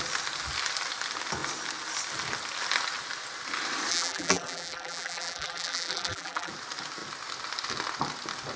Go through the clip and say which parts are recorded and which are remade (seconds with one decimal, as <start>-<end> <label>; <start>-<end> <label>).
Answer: 0.0-3.9 recorded; 3.9-6.5 remade; 6.5-8.6 recorded